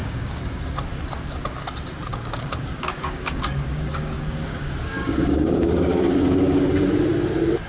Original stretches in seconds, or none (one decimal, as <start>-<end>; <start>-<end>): 0.6-2.1; 6.7-7.7